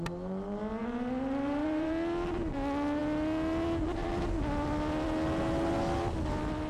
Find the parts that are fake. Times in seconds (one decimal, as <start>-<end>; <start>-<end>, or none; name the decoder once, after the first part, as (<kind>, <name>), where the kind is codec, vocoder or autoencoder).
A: 0.8-1.9 (vocoder, BigVGAN v2)